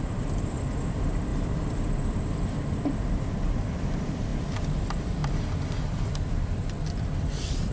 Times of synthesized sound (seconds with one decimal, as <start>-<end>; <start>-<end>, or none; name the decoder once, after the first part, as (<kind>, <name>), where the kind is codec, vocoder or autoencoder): 0.0-4.3 (vocoder, BigVGAN v2); 4.8-5.2; 6.3-7.7